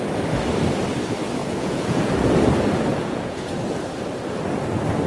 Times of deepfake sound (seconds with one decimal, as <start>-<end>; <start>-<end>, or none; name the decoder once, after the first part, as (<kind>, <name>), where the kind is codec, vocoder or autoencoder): 1.4-2.1 (vocoder, Vocos); 2.9-3.5